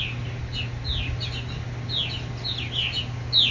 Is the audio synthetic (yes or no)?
no